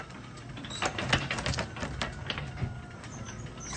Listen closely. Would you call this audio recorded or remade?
recorded